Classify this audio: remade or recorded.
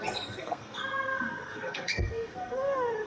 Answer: remade